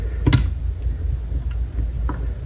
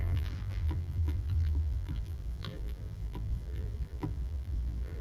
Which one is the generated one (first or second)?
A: second